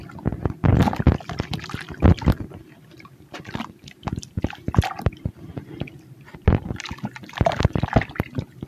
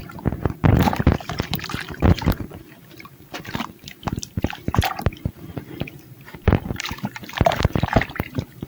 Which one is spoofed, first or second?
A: second